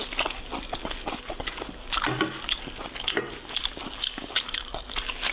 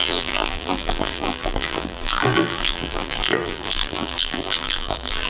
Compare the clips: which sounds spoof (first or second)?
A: second